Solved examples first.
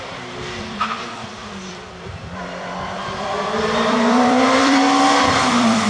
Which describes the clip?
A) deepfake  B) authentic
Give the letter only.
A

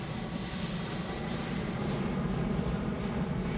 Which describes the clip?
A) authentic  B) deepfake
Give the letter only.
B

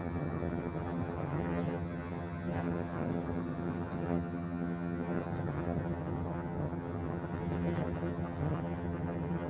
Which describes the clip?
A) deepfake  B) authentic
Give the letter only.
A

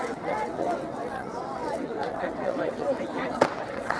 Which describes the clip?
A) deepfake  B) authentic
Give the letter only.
A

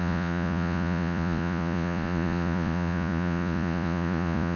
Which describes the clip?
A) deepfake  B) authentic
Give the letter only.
A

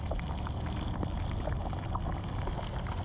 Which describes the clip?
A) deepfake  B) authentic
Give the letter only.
B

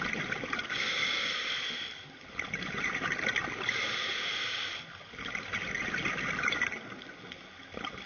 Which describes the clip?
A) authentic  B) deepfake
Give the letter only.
A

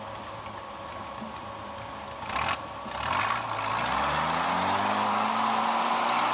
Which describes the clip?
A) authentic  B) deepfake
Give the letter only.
A